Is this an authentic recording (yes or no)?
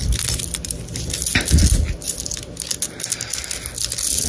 yes